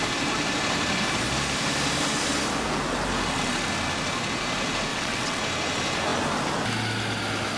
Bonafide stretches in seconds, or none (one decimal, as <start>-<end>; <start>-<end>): 0.0-4.9; 5.4-7.6